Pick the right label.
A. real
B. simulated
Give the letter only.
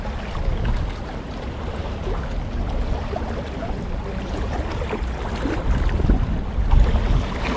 A